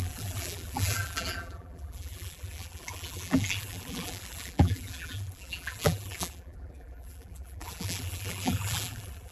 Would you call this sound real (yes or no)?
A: no